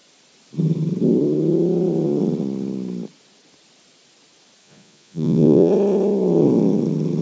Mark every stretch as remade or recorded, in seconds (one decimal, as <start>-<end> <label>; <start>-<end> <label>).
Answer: 0.0-4.6 recorded; 4.6-5.7 remade; 5.7-7.2 recorded